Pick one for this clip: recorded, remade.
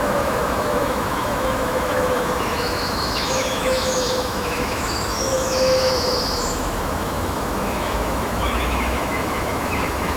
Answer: remade